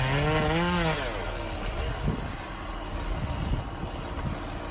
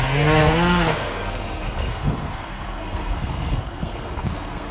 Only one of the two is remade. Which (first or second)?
second